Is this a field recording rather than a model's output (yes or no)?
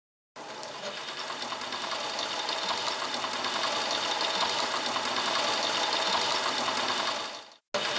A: yes